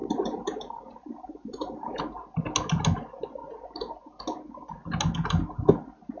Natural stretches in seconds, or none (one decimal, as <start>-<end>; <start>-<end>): 2.0-6.2